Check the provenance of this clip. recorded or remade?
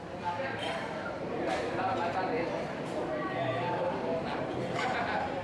remade